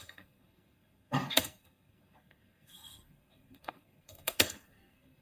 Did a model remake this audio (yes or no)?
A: yes